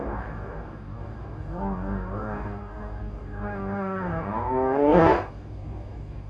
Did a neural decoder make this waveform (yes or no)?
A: yes